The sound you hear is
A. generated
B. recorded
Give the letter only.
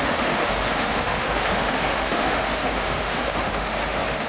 A